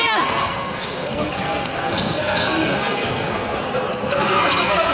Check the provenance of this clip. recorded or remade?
remade